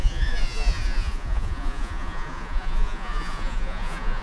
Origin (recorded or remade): remade